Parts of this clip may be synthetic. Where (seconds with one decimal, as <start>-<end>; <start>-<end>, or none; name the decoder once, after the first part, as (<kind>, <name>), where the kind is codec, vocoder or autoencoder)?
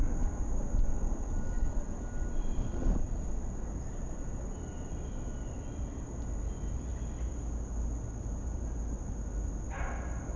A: 2.7-3.2 (vocoder, Vocos)